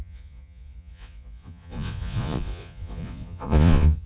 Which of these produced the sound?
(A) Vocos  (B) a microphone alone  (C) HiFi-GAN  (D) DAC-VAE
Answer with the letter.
A